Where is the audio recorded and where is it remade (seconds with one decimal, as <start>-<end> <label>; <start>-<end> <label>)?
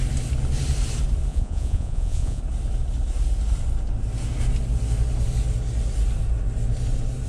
0.0-1.3 recorded; 1.3-2.4 remade; 2.4-7.3 recorded